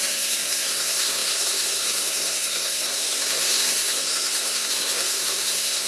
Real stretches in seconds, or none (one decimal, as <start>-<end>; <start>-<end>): none